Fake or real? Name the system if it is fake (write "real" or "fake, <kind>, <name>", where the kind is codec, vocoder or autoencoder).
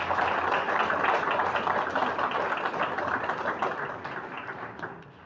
real